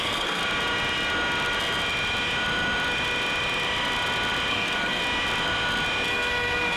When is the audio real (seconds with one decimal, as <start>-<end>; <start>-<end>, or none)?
0.4-4.5; 5.0-6.1